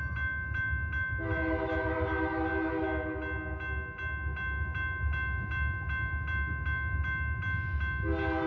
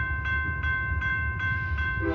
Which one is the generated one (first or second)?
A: second